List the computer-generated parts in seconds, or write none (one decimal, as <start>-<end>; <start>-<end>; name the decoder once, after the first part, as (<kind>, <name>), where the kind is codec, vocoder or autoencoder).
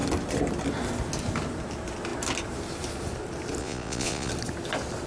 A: 3.6-4.3 (vocoder, Vocos)